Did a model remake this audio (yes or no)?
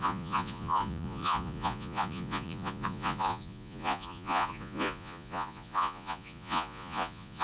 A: yes